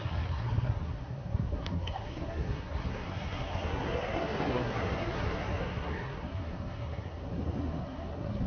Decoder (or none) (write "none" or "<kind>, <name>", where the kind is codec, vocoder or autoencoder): codec, SNAC